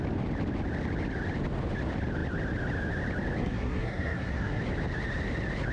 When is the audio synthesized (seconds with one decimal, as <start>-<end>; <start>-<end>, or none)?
3.4-4.6